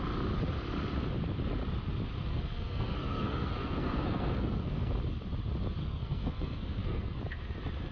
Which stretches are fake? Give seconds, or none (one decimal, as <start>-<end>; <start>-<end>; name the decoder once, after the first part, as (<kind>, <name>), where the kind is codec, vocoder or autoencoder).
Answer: 2.3-4.9 (codec, SNAC); 5.8-7.2